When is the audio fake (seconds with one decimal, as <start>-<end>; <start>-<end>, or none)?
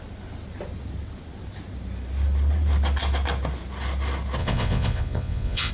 4.4-5.7